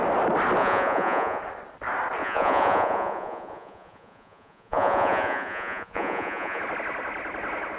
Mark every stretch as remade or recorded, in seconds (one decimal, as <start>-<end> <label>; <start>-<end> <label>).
0.0-0.6 recorded; 0.6-1.4 remade; 1.4-2.2 recorded; 2.2-6.6 remade; 6.6-7.8 recorded